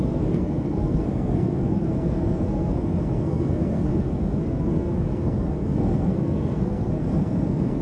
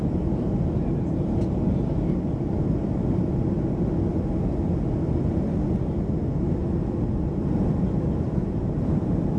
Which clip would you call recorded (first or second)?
second